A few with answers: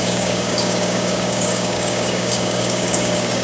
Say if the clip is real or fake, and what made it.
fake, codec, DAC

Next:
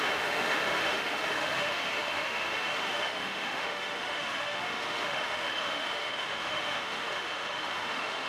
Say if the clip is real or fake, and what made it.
fake, autoencoder, DAC-VAE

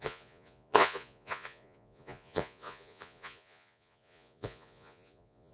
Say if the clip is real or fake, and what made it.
fake, vocoder, Vocos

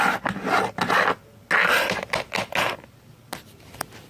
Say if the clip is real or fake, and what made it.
real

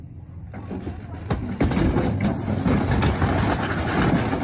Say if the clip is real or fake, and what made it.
real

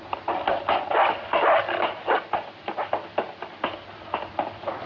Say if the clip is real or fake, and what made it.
real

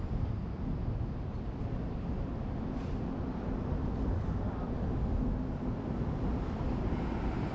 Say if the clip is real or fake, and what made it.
fake, vocoder, BigVGAN v2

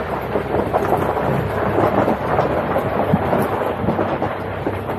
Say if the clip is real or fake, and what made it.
real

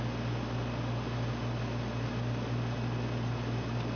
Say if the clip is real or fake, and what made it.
real